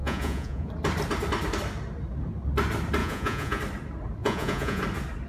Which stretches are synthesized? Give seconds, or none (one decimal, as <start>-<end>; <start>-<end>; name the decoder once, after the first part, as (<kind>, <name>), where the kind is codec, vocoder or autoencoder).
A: 0.0-0.7 (vocoder, Vocos); 3.0-3.6; 4.2-4.8